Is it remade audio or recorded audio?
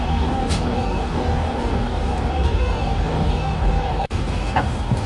remade